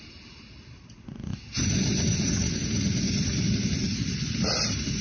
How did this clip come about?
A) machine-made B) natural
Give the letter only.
B